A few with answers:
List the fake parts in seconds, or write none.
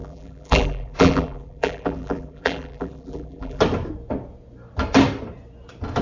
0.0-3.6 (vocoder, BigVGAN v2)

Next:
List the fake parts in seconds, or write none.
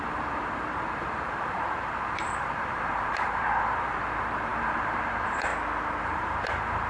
0.0-5.5 (vocoder, BigVGAN v2); 6.0-6.9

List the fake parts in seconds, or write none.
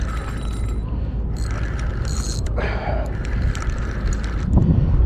1.9-3.8 (vocoder, BigVGAN v2)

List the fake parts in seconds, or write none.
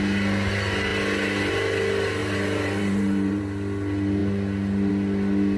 2.2-3.4 (vocoder, BigVGAN v2)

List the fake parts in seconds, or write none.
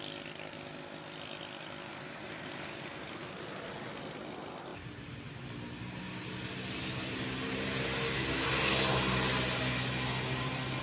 1.9-2.8 (vocoder, BigVGAN v2)